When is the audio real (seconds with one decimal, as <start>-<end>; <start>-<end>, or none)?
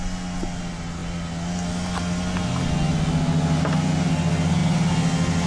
0.0-5.5